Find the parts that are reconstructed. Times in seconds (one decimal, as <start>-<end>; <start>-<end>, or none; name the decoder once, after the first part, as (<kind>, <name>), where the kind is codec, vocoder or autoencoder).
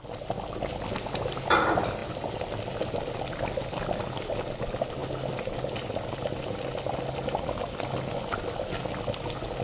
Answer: none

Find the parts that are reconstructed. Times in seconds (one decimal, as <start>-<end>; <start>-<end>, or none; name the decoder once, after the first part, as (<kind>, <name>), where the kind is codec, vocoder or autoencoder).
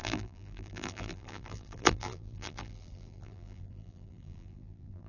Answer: 0.0-5.1 (vocoder, BigVGAN v2)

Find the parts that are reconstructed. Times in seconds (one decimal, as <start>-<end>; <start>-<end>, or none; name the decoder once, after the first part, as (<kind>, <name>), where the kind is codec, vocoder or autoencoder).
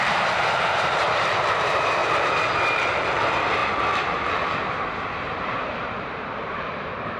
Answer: 0.0-2.0 (vocoder, BigVGAN v2); 2.6-7.2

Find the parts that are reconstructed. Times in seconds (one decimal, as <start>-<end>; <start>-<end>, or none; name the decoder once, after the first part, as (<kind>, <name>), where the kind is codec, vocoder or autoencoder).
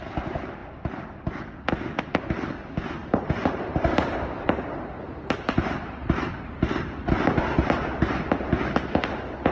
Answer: 3.0-7.0 (vocoder, BigVGAN v2)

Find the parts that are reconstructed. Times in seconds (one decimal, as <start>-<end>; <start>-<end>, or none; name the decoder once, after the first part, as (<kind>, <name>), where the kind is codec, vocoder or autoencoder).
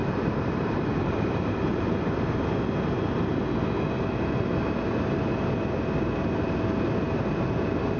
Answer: 0.0-2.6 (vocoder, BigVGAN v2)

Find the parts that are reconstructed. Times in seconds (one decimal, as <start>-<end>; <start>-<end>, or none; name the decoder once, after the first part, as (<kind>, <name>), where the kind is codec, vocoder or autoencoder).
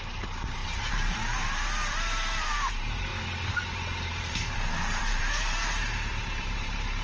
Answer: 0.0-7.0 (vocoder, BigVGAN v2)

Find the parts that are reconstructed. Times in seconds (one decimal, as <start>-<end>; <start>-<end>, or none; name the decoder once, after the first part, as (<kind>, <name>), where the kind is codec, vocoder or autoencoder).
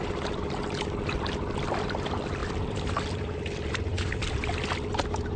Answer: 2.4-3.5 (vocoder, BigVGAN v2); 3.9-4.7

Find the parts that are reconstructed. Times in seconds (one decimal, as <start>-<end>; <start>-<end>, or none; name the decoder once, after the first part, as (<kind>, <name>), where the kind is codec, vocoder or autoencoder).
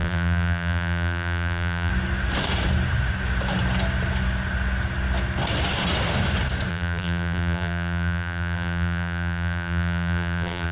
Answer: 0.0-1.9 (vocoder, BigVGAN v2); 6.7-10.7